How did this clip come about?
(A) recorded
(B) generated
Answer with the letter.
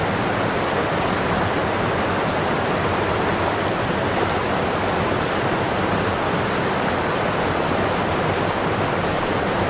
A